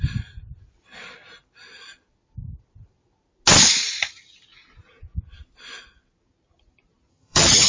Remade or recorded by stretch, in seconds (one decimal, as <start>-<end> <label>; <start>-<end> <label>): 0.0-7.1 recorded; 7.1-7.7 remade